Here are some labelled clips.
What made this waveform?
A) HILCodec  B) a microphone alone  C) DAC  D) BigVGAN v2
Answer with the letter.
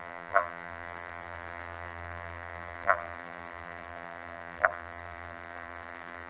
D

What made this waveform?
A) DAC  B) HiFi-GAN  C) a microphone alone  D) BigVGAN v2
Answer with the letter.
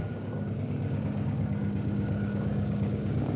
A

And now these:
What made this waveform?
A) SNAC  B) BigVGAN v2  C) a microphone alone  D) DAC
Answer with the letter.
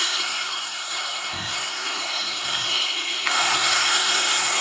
A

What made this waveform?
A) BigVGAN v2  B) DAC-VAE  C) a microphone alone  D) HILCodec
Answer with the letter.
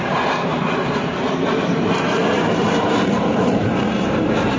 A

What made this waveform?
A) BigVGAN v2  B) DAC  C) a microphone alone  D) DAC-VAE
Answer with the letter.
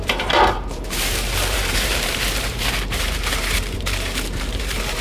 A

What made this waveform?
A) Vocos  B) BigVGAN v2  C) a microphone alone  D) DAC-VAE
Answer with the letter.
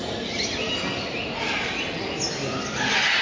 C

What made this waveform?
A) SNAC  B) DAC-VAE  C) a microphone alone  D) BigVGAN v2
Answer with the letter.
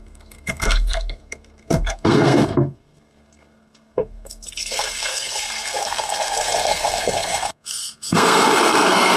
A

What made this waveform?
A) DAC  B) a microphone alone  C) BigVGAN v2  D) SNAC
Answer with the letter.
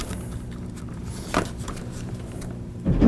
C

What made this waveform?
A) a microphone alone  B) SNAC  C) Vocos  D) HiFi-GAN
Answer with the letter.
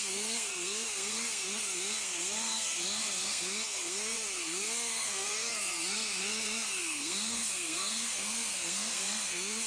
B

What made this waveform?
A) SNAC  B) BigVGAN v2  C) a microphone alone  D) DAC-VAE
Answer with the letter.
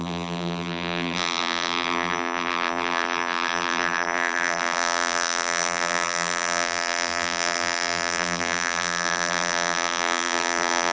B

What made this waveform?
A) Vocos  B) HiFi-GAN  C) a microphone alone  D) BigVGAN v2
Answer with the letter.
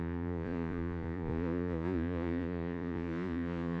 A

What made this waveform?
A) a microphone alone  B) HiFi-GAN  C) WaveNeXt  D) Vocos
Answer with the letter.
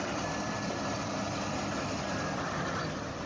A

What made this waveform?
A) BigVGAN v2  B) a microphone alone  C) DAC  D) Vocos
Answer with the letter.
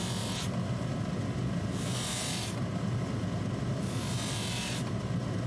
B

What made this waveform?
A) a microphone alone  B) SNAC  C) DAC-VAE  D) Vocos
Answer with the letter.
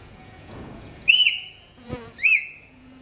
D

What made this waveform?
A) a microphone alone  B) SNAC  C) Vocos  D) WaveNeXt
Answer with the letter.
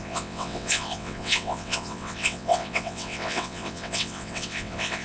D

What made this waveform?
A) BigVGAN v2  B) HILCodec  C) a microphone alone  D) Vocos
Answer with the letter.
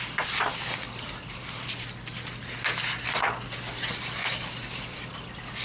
C